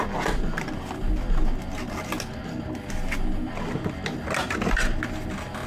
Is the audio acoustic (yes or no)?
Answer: yes